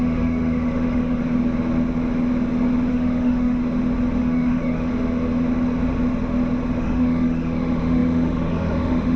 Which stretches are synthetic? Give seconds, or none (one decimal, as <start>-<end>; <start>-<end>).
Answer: 0.0-1.2; 2.9-3.6; 4.2-4.9; 6.8-9.2